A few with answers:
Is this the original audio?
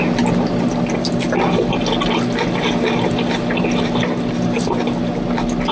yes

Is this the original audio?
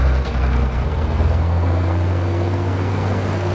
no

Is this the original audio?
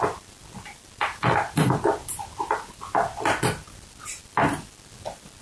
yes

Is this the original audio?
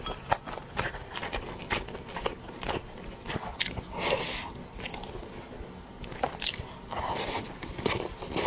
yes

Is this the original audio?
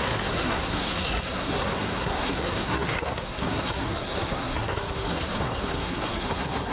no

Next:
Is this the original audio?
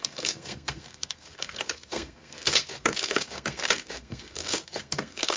no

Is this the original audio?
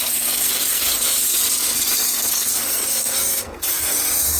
no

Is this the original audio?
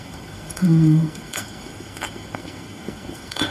no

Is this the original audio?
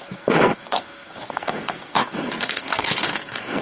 no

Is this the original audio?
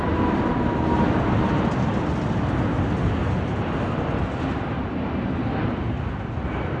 yes